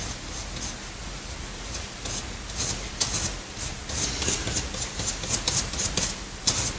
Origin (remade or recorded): recorded